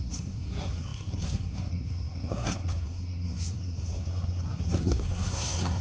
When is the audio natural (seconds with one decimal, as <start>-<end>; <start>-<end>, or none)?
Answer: none